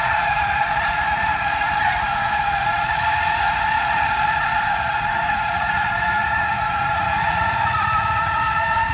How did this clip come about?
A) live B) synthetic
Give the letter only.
B